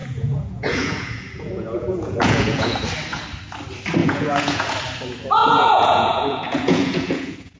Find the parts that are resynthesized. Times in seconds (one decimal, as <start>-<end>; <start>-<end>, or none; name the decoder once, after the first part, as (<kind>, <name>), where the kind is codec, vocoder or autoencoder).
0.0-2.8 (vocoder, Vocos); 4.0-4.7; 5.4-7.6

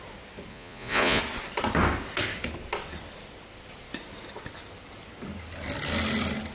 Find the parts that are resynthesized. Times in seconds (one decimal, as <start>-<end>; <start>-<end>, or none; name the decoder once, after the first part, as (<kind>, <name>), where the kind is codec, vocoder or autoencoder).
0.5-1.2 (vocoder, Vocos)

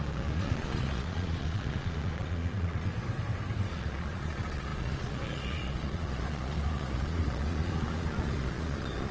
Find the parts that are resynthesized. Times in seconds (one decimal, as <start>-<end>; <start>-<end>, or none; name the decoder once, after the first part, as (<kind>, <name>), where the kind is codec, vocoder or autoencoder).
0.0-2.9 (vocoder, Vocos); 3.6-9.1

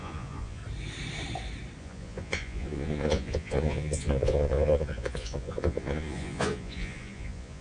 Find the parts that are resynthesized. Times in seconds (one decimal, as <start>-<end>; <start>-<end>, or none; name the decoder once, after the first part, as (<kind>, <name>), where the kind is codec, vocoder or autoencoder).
0.0-0.6 (vocoder, Vocos); 1.8-7.6

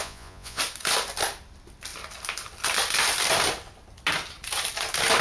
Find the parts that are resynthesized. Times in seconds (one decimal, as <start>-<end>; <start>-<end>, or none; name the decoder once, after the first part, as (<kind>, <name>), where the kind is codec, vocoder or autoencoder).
0.0-0.6 (vocoder, Vocos)